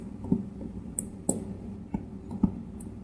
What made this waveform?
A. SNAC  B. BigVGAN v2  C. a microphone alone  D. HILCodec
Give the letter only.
C